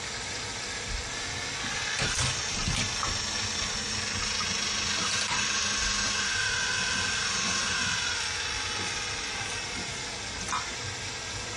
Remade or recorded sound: recorded